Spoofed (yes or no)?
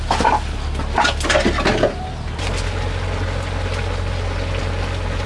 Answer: no